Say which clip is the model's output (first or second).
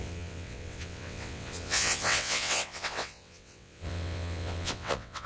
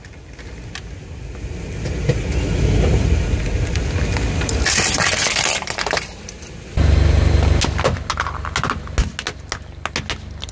first